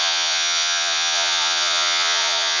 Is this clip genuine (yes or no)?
no